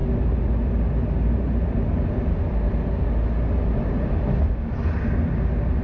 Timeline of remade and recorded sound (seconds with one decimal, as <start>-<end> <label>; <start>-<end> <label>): 0.0-5.8 recorded